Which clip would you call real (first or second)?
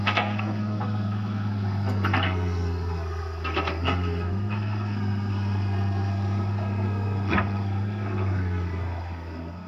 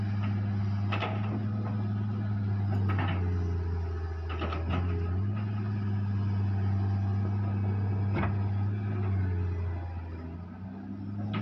second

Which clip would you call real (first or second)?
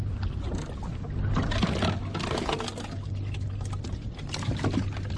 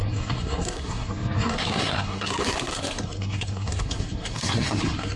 first